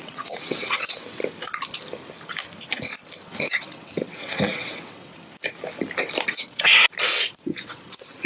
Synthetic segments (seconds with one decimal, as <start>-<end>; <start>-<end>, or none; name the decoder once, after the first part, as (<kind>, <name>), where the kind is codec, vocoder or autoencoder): 0.0-1.2 (vocoder, WaveNeXt); 3.4-5.1; 6.3-6.7; 7.3-8.3